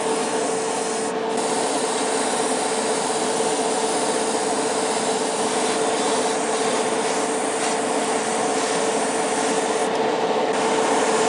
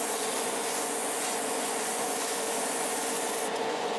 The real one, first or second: first